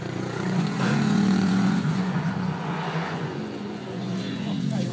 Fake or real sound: fake